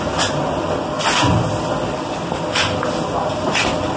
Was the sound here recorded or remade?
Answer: recorded